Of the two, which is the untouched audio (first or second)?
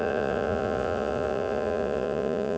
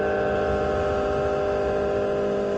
second